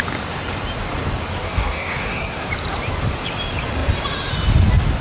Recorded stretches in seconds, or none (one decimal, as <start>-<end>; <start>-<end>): 0.0-1.4; 2.5-5.0